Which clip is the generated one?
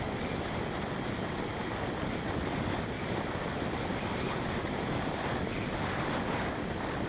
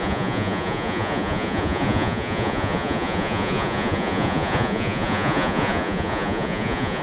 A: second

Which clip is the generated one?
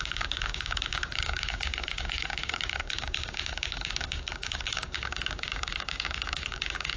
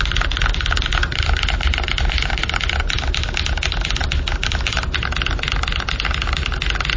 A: first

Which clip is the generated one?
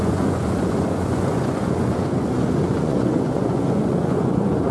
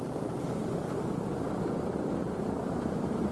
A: first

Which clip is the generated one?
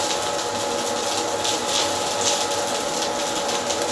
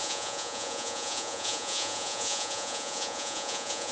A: second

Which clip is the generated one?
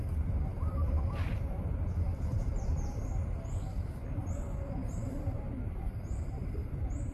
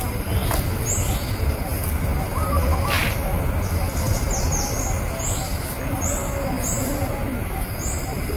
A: first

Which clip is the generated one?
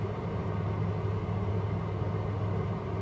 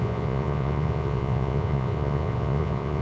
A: second